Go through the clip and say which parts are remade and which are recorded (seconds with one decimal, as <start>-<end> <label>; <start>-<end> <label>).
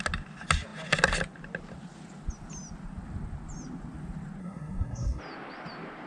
0.0-4.4 recorded; 4.4-5.2 remade; 5.2-6.1 recorded